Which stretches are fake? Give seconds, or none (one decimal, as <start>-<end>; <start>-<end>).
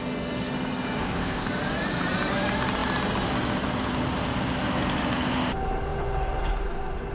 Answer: 1.0-1.5